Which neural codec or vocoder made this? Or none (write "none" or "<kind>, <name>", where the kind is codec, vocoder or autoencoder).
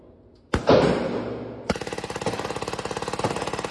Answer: none